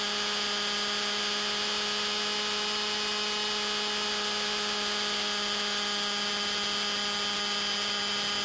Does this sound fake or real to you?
real